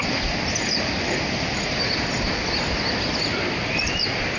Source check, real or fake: real